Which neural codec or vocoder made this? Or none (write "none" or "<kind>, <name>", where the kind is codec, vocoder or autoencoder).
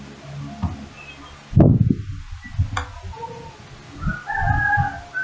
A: none